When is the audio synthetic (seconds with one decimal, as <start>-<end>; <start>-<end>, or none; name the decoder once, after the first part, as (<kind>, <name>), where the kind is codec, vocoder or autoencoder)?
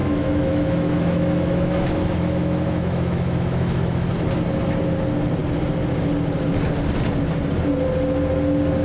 0.0-4.1 (autoencoder, DAC-VAE)